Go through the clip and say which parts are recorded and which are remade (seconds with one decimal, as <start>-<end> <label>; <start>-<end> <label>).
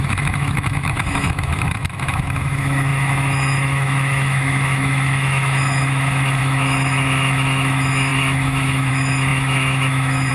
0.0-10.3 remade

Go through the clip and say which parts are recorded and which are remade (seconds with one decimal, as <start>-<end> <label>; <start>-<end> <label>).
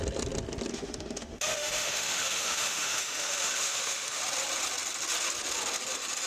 0.0-0.7 recorded; 0.7-4.2 remade; 4.2-6.3 recorded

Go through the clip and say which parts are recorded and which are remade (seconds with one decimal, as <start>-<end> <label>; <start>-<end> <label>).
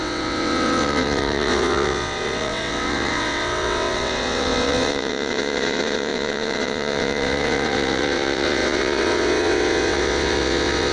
0.0-10.9 remade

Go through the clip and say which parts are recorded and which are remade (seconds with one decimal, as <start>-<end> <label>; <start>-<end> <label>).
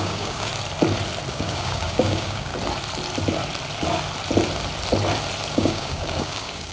0.0-0.5 remade; 0.5-1.3 recorded; 1.3-2.5 remade; 2.5-5.5 recorded; 5.5-6.7 remade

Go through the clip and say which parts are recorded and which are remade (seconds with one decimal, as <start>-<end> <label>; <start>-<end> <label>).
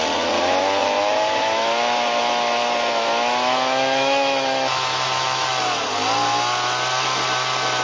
0.0-0.8 recorded; 0.8-5.5 remade; 5.5-7.8 recorded